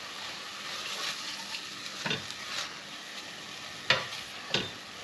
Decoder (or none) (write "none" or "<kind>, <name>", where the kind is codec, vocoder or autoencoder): none